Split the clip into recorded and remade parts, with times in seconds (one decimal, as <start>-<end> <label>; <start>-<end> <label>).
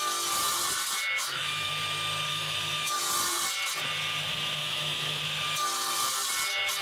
0.0-1.2 recorded; 1.2-1.7 remade; 1.7-2.3 recorded; 2.3-3.0 remade; 3.0-4.6 recorded; 4.6-5.2 remade; 5.2-6.8 recorded